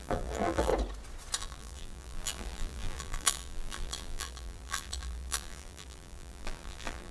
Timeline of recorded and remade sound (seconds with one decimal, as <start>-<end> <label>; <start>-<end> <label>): 0.0-0.7 remade; 0.7-1.4 recorded; 1.4-7.1 remade